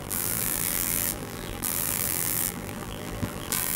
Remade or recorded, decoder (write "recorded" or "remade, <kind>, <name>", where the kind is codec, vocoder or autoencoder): remade, vocoder, BigVGAN v2